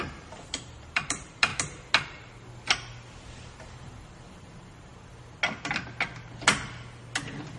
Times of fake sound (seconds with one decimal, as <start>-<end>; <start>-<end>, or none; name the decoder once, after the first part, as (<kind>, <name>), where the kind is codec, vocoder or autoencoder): 0.0-1.5 (vocoder, BigVGAN v2); 3.3-4.9